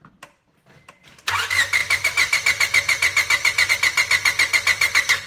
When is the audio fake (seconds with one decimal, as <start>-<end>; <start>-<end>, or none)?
1.8-3.7